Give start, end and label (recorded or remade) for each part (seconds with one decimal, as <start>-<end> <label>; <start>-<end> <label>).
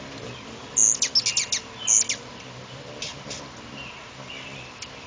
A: 0.0-5.1 recorded